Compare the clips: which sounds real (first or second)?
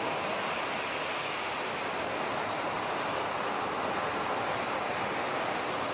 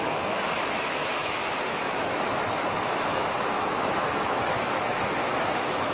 first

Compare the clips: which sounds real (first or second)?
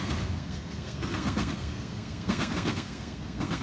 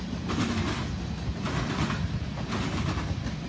second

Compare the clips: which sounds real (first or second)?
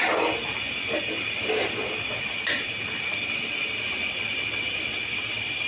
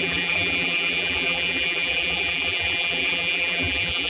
first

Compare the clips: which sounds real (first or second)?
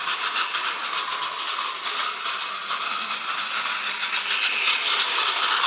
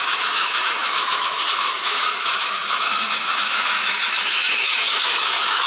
first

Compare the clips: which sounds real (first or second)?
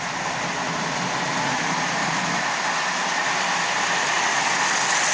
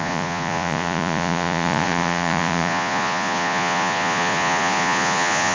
first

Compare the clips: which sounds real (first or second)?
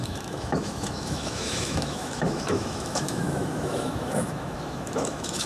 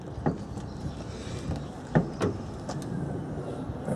second